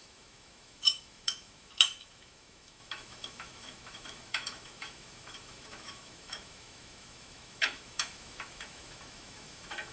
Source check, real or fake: fake